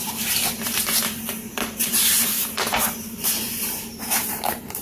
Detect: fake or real fake